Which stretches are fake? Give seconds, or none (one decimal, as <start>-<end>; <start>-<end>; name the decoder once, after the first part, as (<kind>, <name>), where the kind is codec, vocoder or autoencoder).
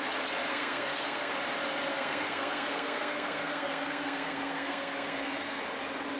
0.5-1.3 (codec, SNAC); 1.9-5.6